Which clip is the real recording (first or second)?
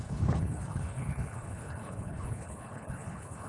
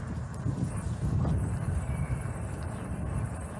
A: second